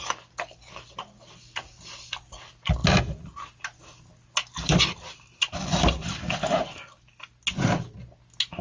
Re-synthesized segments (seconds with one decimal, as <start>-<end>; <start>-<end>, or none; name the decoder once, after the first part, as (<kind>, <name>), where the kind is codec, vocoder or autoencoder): none